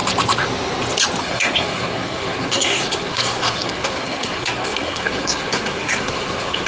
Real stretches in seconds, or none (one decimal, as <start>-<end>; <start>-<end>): 0.0-1.2